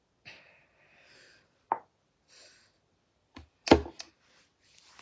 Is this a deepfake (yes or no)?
yes